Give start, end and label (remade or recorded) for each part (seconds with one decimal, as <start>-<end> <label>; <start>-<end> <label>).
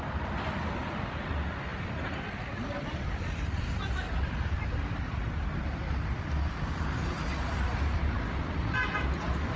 0.0-9.6 recorded